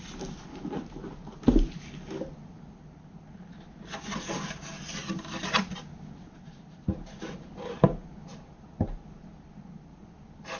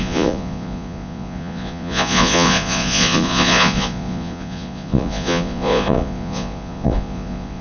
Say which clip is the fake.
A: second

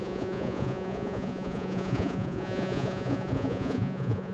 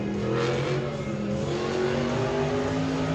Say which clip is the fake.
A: first